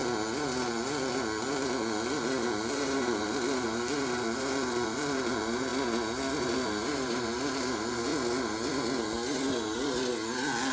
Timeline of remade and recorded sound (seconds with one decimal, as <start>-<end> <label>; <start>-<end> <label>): 0.0-2.7 recorded; 2.7-5.7 remade; 5.7-6.4 recorded; 6.4-8.1 remade; 8.1-10.7 recorded